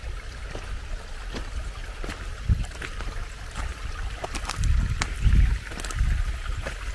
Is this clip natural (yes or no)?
yes